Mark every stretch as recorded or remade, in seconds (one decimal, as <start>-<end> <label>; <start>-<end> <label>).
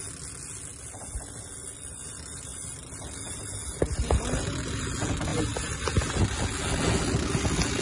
0.0-7.8 recorded